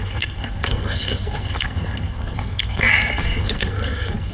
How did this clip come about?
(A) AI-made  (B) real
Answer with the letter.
A